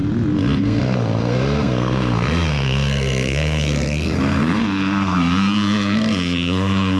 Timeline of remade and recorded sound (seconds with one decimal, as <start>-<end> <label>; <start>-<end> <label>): 0.0-0.6 recorded; 0.6-7.0 remade